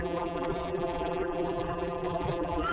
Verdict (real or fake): fake